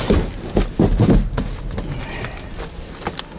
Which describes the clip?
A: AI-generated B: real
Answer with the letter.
B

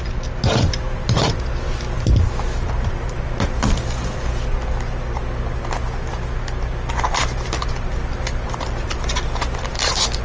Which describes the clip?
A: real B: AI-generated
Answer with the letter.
A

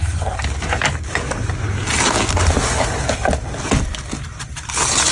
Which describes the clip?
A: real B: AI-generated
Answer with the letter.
A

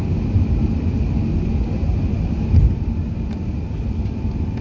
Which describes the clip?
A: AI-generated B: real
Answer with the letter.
B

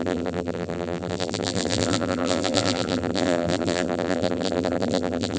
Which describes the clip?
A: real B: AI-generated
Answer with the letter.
B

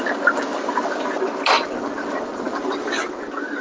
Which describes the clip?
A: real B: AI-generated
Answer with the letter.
A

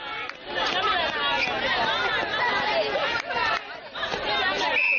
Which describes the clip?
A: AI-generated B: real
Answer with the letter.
B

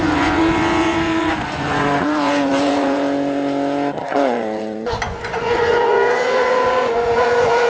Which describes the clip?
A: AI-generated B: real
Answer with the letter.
A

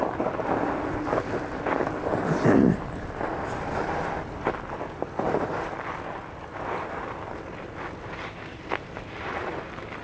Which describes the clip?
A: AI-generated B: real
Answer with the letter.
B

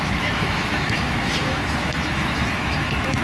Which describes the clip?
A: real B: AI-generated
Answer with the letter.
B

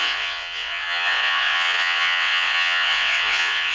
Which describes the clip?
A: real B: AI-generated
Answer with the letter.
B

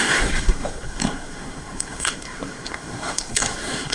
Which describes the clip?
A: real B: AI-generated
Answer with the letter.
B